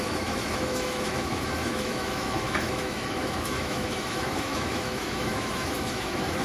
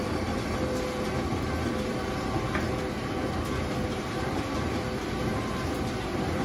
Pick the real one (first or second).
second